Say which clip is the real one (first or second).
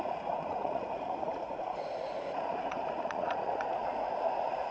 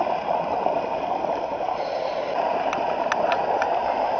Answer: second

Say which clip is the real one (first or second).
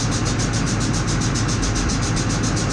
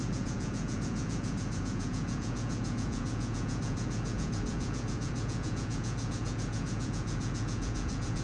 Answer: first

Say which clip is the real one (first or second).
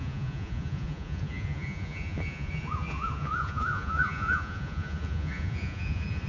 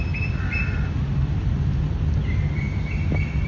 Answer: second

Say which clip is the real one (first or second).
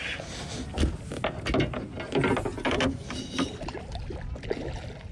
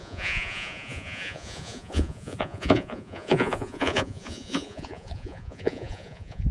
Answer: first